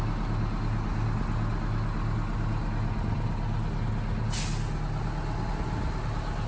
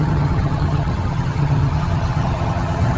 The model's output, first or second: second